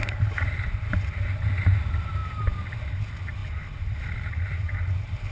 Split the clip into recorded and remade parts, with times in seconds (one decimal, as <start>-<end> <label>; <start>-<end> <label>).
0.0-5.3 recorded